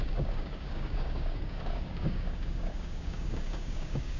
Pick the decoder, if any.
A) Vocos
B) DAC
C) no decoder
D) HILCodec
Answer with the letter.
B